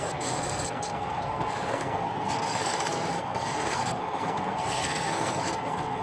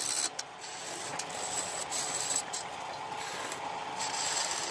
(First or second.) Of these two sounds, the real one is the second